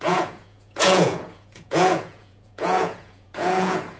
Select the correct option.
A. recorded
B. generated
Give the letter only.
B